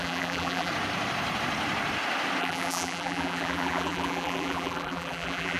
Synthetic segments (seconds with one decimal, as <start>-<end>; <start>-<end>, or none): 0.0-0.7; 2.4-5.6